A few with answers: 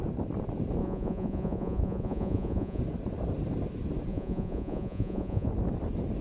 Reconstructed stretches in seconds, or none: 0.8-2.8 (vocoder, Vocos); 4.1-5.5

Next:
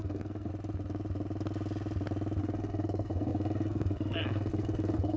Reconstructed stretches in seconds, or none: 0.0-0.5 (codec, SNAC); 2.4-5.2

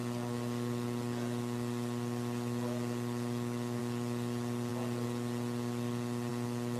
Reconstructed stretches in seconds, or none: none

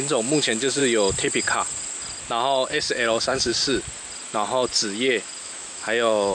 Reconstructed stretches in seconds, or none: 0.0-0.8 (autoencoder, DAC-VAE); 2.9-3.5; 5.4-6.3

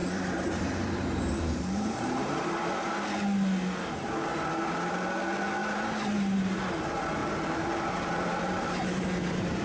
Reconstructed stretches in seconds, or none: 0.0-2.9 (vocoder, BigVGAN v2); 5.6-6.6; 7.2-9.6

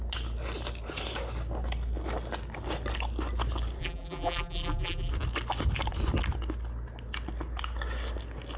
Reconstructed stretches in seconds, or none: 3.8-5.1 (vocoder, BigVGAN v2)

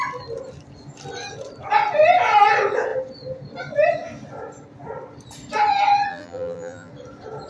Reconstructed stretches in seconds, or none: 6.1-6.9 (vocoder, BigVGAN v2)

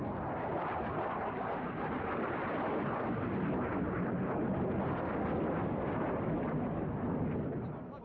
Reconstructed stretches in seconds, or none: none